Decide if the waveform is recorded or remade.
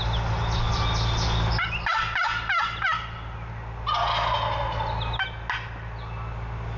recorded